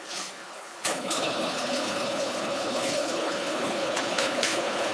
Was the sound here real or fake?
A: fake